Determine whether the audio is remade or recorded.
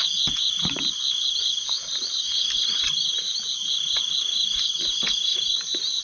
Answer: recorded